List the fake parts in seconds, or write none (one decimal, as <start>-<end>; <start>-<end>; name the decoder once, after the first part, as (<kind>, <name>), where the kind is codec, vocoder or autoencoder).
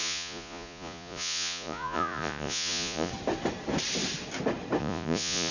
0.0-3.1 (vocoder, Vocos); 4.8-5.5